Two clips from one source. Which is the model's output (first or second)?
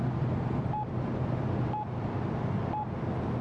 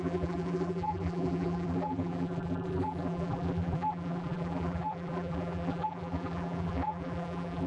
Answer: second